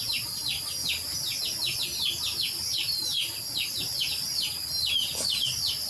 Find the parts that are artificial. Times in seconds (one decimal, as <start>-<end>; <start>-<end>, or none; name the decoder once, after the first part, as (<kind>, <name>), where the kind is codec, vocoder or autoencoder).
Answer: none